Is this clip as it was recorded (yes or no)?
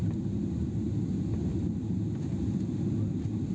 yes